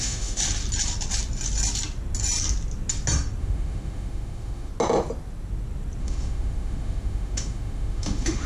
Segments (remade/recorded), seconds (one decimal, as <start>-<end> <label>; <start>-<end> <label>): 0.0-0.4 remade; 0.4-3.4 recorded; 3.4-4.7 remade; 4.7-6.0 recorded; 6.0-8.5 remade